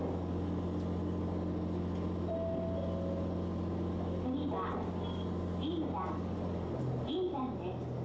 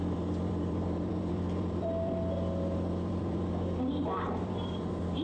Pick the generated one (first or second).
second